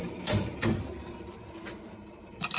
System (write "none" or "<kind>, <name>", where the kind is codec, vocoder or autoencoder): vocoder, BigVGAN v2